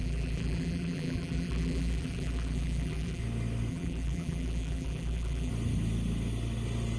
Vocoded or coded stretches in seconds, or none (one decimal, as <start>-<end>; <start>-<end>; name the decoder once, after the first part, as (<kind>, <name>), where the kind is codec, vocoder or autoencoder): 0.0-3.2 (vocoder, BigVGAN v2); 3.7-5.5

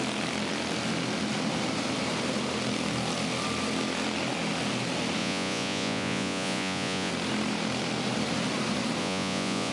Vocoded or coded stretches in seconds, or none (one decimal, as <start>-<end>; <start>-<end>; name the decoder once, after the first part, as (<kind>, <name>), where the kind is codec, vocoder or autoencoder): 5.2-7.1 (vocoder, Vocos); 9.0-9.7

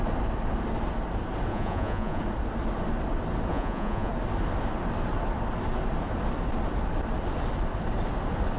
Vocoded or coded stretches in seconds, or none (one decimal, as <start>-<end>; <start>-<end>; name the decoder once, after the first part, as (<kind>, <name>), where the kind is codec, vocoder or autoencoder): 1.5-2.2 (vocoder, Vocos); 3.5-4.1

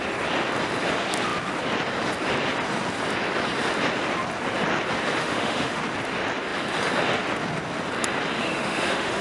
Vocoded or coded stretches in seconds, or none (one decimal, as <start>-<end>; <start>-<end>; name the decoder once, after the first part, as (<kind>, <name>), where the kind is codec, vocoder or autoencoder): 5.2-5.8 (autoencoder, DAC-VAE); 8.4-9.2

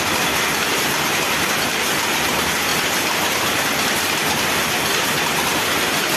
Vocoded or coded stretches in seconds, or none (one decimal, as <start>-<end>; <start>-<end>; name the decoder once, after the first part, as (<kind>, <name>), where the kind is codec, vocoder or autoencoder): none